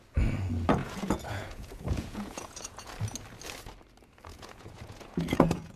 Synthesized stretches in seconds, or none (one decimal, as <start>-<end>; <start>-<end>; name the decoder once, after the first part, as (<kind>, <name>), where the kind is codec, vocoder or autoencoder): 0.8-2.9 (vocoder, Vocos); 4.3-5.8